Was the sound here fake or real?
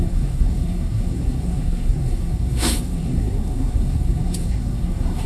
fake